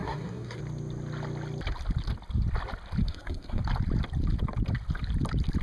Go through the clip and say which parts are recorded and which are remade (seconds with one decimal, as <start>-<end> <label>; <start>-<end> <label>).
0.0-0.6 remade; 0.6-3.0 recorded; 3.0-3.6 remade; 3.6-5.6 recorded